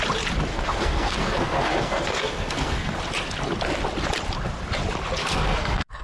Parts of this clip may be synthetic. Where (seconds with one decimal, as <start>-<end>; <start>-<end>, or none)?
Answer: 0.5-3.0; 5.2-6.0